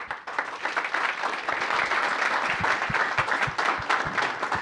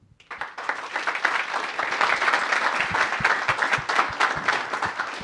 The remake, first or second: first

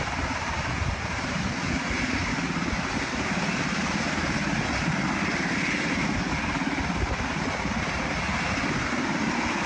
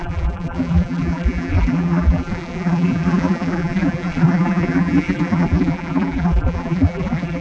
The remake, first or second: second